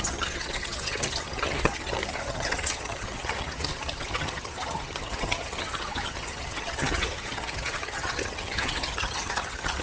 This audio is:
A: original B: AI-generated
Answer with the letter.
B